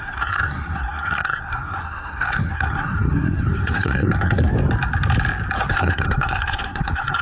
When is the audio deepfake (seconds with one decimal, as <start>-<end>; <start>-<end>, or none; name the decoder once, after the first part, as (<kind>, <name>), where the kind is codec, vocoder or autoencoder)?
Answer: 0.0-4.5 (codec, SNAC); 5.7-7.2